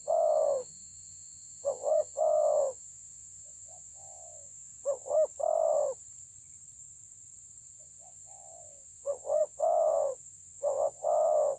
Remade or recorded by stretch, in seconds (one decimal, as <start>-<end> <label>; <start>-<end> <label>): 0.0-4.7 remade; 4.7-7.7 recorded; 7.7-11.6 remade